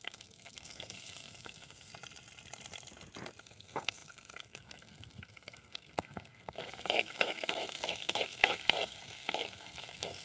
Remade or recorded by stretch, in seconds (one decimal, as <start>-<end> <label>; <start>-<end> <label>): 0.0-1.9 remade; 1.9-3.4 recorded; 3.4-10.2 remade